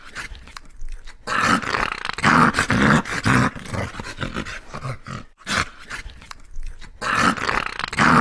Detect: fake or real real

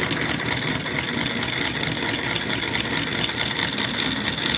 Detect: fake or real real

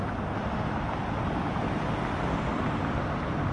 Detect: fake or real real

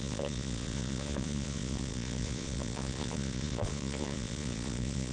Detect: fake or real fake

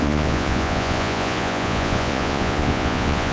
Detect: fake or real fake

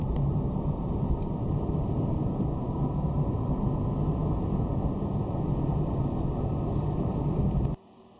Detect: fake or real real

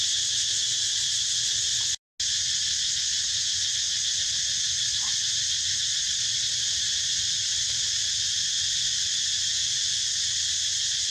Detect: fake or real real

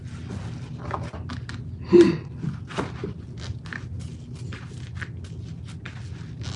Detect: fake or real real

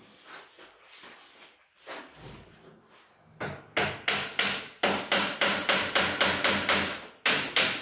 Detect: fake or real real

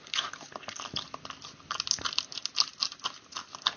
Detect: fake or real real